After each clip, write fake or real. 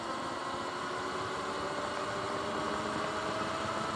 real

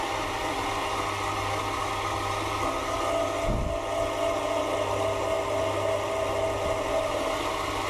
real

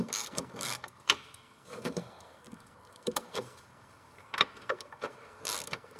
fake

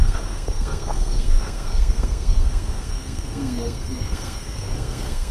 fake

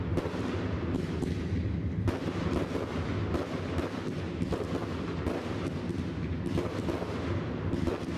real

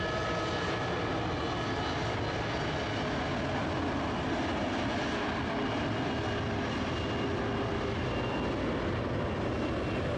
real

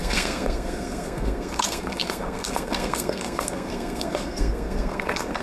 fake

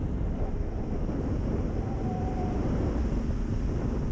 real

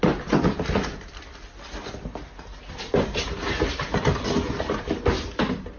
real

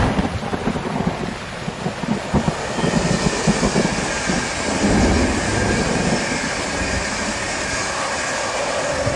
real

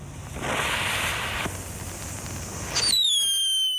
real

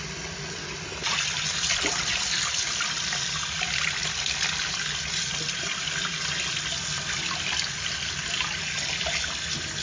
real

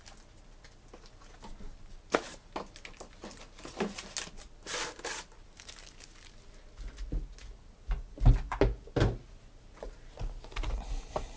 real